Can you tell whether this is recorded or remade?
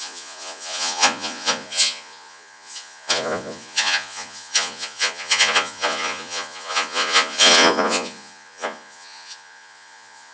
remade